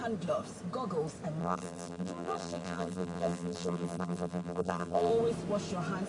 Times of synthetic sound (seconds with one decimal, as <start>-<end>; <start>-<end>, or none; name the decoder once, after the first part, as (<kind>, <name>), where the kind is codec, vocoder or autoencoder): 1.4-5.1 (vocoder, BigVGAN v2)